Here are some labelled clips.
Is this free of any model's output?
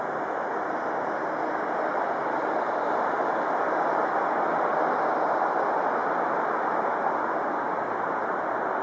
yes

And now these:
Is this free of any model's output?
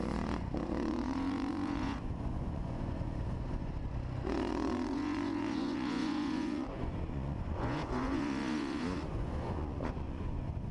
no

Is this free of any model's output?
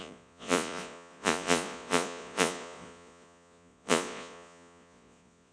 no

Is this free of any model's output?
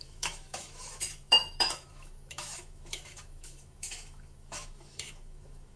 no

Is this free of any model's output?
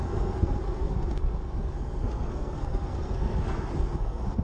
no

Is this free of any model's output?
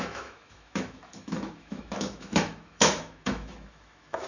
no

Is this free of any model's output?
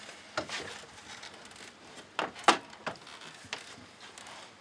yes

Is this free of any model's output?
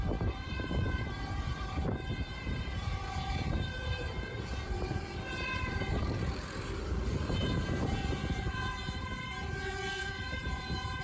no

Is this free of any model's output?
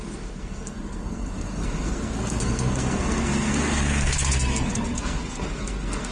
no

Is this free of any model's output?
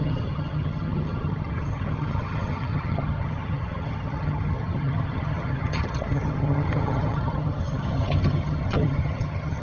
no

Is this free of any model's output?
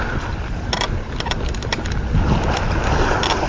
yes